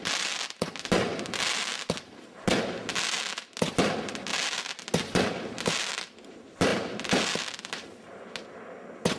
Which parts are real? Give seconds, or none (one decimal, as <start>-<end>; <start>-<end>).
0.0-9.2